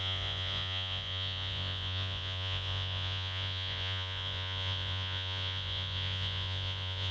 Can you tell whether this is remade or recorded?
remade